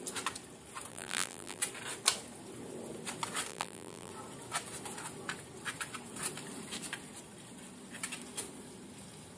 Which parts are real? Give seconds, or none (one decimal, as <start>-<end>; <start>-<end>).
0.0-0.9; 1.6-3.5; 4.1-9.4